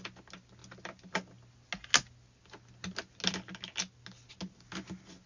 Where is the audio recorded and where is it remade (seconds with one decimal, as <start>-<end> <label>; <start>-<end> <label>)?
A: 0.0-5.3 recorded